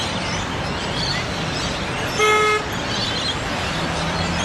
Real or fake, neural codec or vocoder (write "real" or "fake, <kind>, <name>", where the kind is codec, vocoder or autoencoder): real